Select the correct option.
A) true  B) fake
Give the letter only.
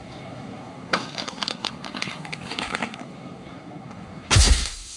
B